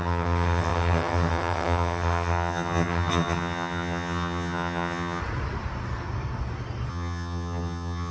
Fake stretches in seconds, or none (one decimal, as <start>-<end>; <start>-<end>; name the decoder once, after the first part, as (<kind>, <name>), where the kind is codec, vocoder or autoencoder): 0.0-5.2 (vocoder, HiFi-GAN); 6.9-8.1